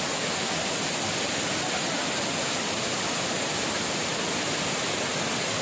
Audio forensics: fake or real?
real